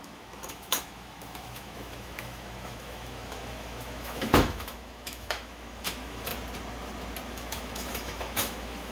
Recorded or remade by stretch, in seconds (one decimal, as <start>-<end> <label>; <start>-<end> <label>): 0.0-6.3 remade; 6.3-7.3 recorded; 7.3-8.9 remade

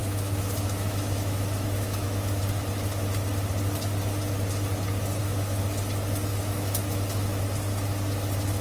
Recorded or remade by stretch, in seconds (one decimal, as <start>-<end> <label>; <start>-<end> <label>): 0.0-2.4 remade; 2.4-5.2 recorded; 5.2-5.8 remade; 5.8-6.3 recorded; 6.3-7.4 remade; 7.4-8.6 recorded

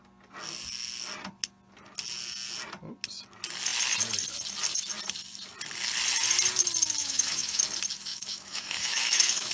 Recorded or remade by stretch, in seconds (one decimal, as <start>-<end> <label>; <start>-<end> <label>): 0.0-7.0 recorded; 7.0-7.6 remade; 7.6-8.1 recorded; 8.1-9.5 remade

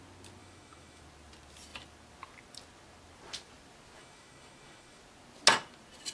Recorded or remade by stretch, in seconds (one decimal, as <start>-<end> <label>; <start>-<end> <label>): 0.0-0.4 recorded; 0.4-1.0 remade; 1.0-4.0 recorded; 4.0-5.0 remade; 5.0-6.1 recorded

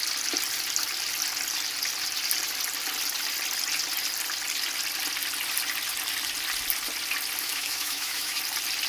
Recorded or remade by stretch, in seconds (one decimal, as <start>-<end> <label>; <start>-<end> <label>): 0.0-7.4 recorded; 7.4-8.4 remade; 8.4-8.9 recorded

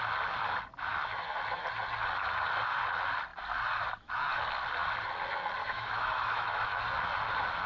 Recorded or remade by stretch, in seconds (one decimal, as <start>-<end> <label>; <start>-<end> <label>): 0.0-5.6 recorded; 5.6-6.8 remade; 6.8-7.7 recorded

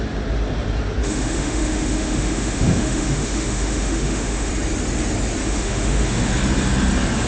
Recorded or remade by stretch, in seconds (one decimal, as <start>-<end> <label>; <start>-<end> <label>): 0.0-1.0 recorded; 1.0-4.5 remade; 4.5-5.4 recorded; 5.4-6.3 remade; 6.3-7.3 recorded

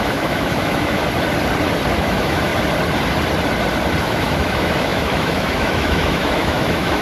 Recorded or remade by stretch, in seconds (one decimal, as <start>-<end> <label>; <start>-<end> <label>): 0.0-1.0 remade; 1.0-1.9 recorded; 1.9-2.5 remade; 2.5-4.0 recorded; 4.0-7.0 remade